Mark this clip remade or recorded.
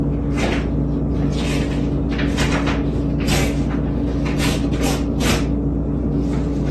recorded